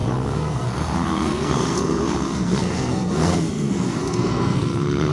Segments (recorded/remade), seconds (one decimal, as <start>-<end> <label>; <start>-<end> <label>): 0.0-5.1 remade